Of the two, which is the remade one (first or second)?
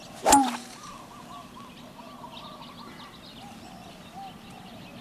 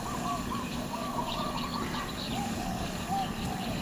second